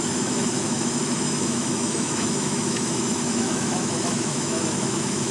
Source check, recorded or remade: remade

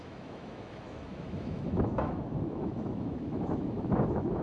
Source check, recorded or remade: remade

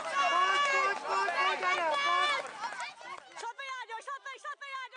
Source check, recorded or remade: recorded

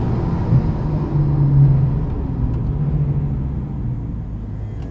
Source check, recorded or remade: recorded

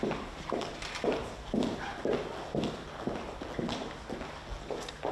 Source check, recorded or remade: recorded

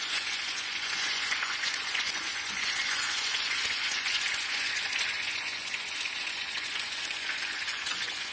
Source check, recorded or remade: remade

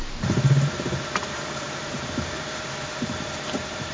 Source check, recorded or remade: remade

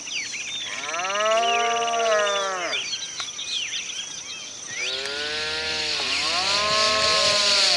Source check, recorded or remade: recorded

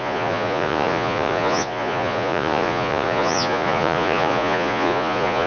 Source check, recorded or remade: remade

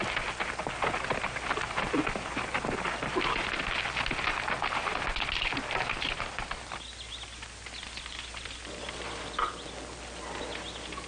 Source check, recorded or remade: recorded